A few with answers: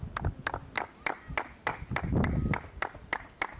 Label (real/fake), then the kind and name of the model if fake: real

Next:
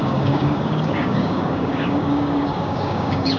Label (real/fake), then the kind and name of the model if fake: fake, codec, DAC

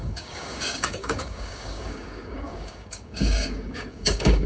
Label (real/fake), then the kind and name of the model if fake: fake, codec, DAC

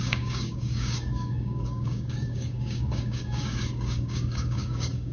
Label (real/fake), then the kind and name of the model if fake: fake, codec, DAC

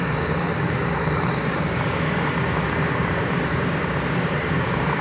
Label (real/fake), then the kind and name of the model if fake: fake, codec, DAC